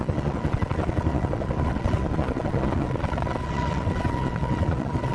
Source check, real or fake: fake